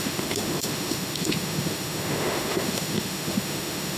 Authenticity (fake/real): fake